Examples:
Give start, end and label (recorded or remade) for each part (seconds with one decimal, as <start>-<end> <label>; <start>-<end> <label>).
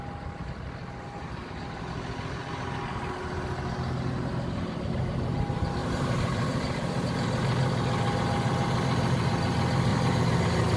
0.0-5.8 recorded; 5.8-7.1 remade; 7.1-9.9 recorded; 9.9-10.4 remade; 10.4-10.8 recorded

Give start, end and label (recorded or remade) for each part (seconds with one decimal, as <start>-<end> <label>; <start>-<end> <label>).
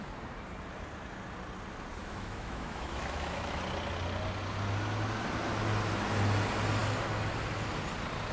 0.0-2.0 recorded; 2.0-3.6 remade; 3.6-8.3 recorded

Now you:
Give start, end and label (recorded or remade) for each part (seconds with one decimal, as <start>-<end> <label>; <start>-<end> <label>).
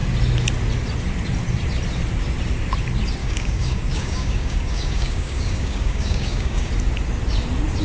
0.0-3.2 recorded; 3.2-6.7 remade; 6.7-7.8 recorded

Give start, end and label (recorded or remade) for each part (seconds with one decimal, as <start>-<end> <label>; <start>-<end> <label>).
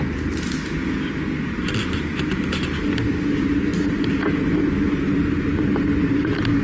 0.0-6.6 recorded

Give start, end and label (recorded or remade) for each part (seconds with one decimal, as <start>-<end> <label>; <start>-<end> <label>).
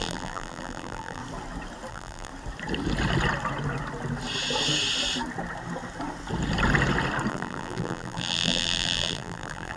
0.0-1.2 remade; 1.2-1.9 recorded; 1.9-2.3 remade; 2.3-7.3 recorded; 7.3-9.8 remade